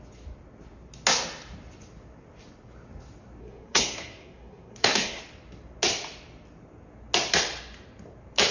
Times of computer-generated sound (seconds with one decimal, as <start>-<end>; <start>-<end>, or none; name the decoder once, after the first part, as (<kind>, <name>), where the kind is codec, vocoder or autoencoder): 3.4-5.2 (codec, SNAC)